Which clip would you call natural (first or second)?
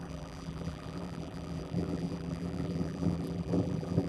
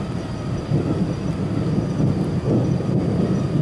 second